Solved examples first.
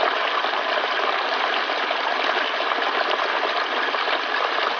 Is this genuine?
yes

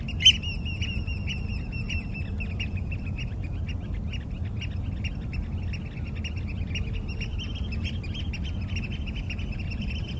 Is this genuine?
yes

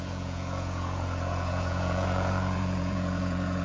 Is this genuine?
no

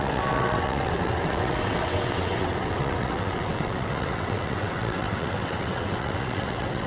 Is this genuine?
no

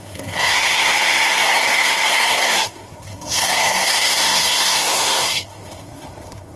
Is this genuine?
no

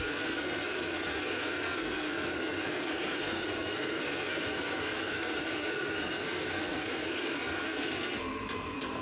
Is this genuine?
no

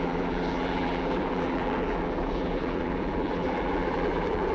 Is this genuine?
no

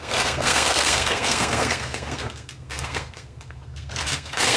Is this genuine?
no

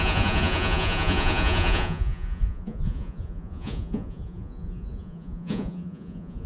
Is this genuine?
no